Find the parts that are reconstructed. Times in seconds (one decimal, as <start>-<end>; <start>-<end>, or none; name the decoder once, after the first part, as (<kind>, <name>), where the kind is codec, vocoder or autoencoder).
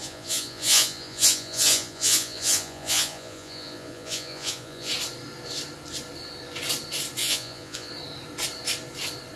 0.0-4.9 (vocoder, Vocos); 7.2-7.9